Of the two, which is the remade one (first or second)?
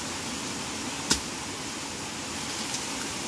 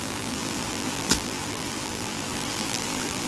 second